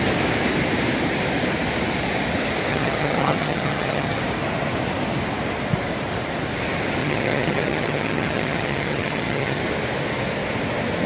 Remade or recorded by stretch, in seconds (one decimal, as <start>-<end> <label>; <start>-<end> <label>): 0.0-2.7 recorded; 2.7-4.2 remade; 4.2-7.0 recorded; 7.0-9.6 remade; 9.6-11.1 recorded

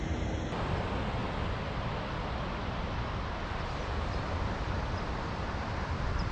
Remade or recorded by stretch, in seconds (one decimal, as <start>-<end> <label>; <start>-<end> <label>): 0.0-1.2 remade; 1.2-2.1 recorded; 2.1-6.3 remade

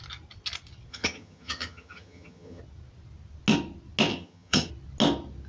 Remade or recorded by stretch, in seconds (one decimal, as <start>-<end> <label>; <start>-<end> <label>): 0.0-0.9 recorded; 0.9-2.6 remade; 2.6-4.1 recorded; 4.1-4.7 remade; 4.7-5.5 recorded

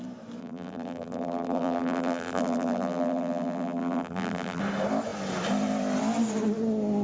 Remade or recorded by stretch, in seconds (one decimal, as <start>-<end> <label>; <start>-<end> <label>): 0.0-0.4 recorded; 0.4-4.6 remade; 4.6-7.0 recorded